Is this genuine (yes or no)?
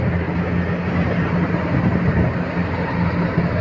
yes